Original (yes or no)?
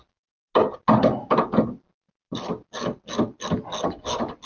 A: yes